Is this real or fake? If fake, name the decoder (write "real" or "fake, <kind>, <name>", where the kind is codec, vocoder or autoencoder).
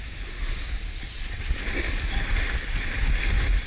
real